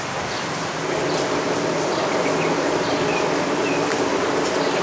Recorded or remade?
recorded